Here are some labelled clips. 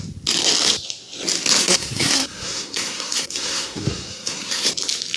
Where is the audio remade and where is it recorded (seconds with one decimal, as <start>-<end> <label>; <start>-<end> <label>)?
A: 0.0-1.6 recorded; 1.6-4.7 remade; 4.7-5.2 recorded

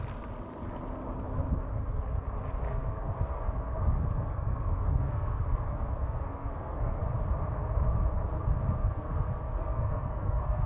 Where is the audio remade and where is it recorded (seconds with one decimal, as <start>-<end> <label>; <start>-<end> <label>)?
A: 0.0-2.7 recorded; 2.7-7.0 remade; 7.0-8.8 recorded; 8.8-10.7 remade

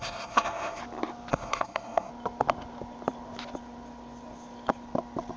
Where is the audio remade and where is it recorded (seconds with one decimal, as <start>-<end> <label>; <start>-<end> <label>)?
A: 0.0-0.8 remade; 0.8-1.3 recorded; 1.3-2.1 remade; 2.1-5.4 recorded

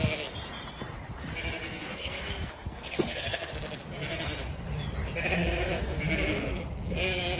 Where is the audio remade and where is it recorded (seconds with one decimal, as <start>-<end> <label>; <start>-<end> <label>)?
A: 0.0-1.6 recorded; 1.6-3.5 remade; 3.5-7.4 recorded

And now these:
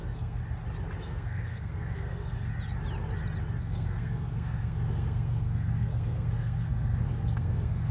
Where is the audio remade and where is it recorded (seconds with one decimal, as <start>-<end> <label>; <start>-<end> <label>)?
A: 0.0-0.4 remade; 0.4-1.0 recorded; 1.0-2.5 remade; 2.5-3.6 recorded; 3.6-7.9 remade

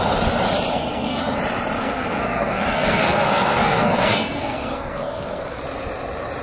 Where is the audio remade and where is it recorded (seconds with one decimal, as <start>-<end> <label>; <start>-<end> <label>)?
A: 0.0-0.7 recorded; 0.7-1.4 remade; 1.4-1.8 recorded; 1.8-5.6 remade; 5.6-6.4 recorded